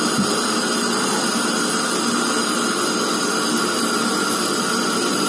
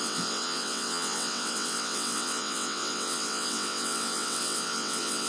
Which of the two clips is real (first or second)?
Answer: first